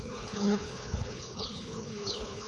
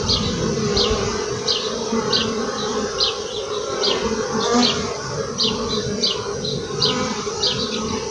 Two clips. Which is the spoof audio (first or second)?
first